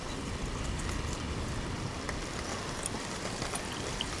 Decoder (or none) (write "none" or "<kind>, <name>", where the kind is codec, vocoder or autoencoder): none